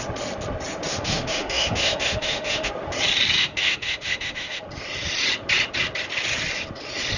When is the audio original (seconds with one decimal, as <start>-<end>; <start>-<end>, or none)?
0.0-0.9; 2.7-3.4; 4.6-7.2